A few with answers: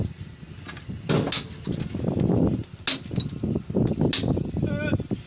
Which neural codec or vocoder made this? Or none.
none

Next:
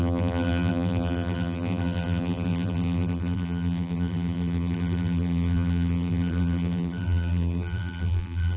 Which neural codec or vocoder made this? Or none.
vocoder, BigVGAN v2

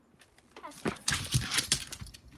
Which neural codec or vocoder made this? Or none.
none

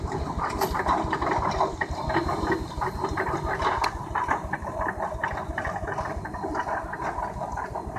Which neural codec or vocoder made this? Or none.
vocoder, BigVGAN v2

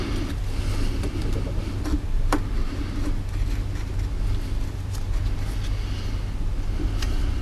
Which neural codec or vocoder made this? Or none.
none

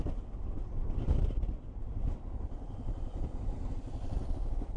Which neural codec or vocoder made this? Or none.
vocoder, BigVGAN v2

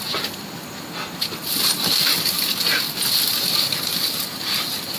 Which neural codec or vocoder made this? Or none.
none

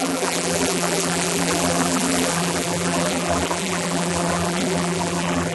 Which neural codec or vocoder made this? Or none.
vocoder, BigVGAN v2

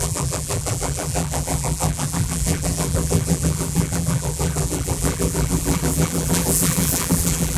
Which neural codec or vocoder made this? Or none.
vocoder, BigVGAN v2